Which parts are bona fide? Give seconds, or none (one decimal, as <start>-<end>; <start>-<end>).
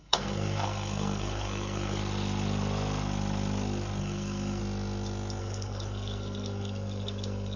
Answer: 2.0-4.0; 4.6-5.4